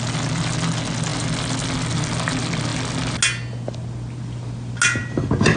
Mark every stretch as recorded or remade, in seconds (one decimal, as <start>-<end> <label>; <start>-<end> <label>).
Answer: 0.0-5.6 recorded